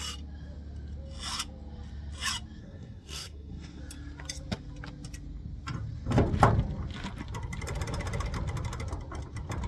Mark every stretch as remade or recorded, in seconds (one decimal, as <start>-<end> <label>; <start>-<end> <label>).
0.0-2.6 recorded; 2.6-3.8 remade; 3.8-9.7 recorded